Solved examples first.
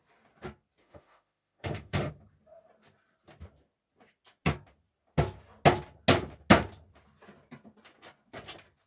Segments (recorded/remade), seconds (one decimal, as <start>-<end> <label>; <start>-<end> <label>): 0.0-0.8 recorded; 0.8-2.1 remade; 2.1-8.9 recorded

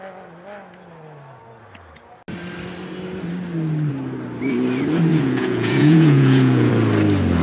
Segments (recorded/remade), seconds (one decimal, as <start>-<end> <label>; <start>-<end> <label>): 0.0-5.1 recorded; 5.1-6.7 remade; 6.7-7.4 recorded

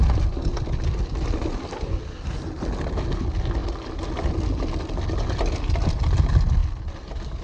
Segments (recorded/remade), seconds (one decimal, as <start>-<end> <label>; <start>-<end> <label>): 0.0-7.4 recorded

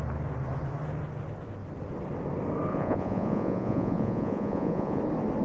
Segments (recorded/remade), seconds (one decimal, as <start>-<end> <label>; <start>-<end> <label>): 0.0-2.7 recorded; 2.7-5.0 remade; 5.0-5.4 recorded

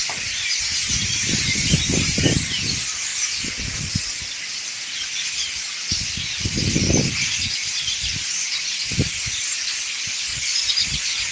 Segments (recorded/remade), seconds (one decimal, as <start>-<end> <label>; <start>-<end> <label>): 0.0-11.3 recorded

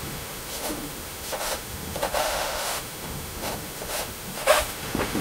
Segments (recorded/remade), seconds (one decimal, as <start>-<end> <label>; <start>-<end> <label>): 0.0-5.2 remade

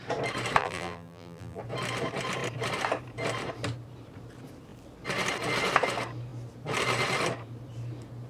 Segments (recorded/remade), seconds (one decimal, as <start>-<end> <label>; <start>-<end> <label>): 0.0-0.6 recorded; 0.6-1.6 remade; 1.6-8.3 recorded

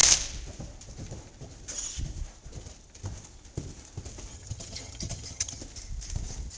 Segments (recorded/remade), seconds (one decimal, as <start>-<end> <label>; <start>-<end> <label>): 0.0-4.3 recorded; 4.3-5.6 remade; 5.6-6.6 recorded